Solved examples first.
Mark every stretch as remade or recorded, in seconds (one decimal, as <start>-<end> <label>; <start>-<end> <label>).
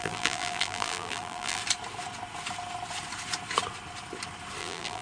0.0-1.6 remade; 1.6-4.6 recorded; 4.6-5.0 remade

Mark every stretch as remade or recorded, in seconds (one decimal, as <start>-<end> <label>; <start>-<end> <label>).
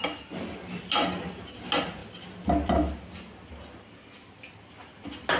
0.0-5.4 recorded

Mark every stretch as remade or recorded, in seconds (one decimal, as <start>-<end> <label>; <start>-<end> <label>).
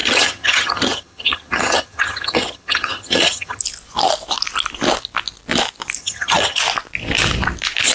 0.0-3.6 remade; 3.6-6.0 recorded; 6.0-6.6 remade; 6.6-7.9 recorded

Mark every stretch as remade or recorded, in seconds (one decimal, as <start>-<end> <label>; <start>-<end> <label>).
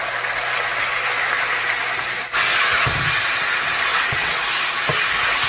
0.0-3.9 recorded; 3.9-4.4 remade; 4.4-5.5 recorded